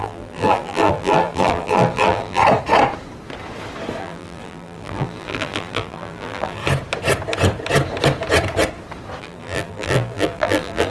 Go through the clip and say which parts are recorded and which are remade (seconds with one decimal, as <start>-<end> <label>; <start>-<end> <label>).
0.0-2.4 remade; 2.4-4.0 recorded; 4.0-6.6 remade; 6.6-9.2 recorded; 9.2-10.9 remade